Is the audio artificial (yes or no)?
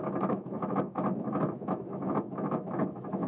yes